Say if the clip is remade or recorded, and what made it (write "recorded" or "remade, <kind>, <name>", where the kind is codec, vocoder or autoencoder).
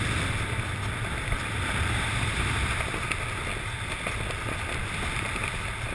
recorded